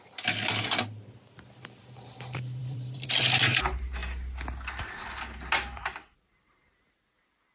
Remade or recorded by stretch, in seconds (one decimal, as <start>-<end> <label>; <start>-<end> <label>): 0.0-2.6 recorded; 2.6-3.2 remade; 3.2-7.5 recorded